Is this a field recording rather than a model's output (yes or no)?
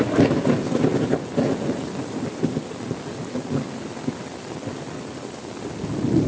yes